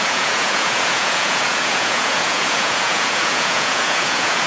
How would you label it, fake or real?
fake